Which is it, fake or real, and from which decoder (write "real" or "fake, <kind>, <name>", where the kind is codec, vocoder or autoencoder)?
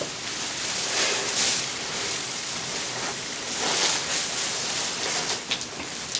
real